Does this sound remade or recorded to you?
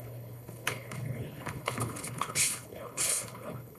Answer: remade